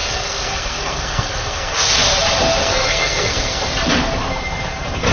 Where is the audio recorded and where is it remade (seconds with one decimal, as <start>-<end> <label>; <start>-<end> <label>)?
0.0-1.9 remade; 1.9-2.6 recorded; 2.6-3.6 remade; 3.6-5.1 recorded